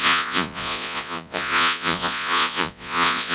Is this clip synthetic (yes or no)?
yes